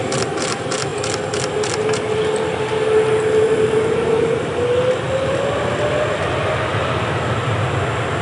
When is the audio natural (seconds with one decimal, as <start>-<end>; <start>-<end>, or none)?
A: 0.0-8.2